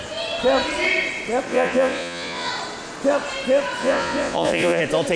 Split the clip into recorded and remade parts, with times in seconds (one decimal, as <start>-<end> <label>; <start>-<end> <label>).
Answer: 0.0-1.5 recorded; 1.5-2.5 remade; 2.5-3.8 recorded; 3.8-4.8 remade; 4.8-5.2 recorded